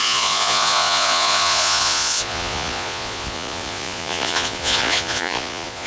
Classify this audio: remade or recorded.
remade